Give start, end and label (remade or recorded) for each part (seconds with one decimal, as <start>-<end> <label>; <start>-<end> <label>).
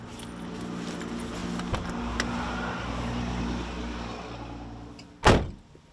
0.0-5.9 recorded